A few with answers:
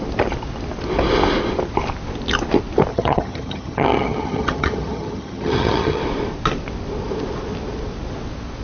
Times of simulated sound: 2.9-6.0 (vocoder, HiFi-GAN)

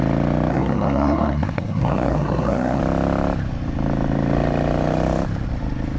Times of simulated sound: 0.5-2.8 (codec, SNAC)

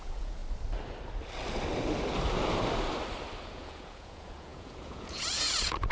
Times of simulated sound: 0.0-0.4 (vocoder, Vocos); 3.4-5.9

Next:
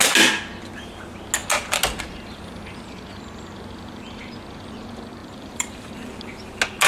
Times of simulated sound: 5.2-5.9 (vocoder, BigVGAN v2)